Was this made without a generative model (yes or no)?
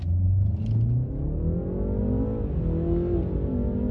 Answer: yes